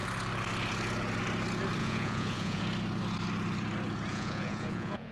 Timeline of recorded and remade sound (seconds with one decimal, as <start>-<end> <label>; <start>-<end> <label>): 0.0-1.8 recorded; 1.8-2.6 remade; 2.6-4.1 recorded; 4.1-5.1 remade